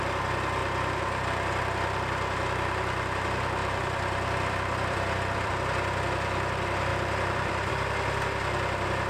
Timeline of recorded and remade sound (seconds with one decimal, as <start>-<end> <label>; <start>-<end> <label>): 0.0-3.6 recorded; 3.6-5.5 remade; 5.5-6.9 recorded; 6.9-7.7 remade; 7.7-9.1 recorded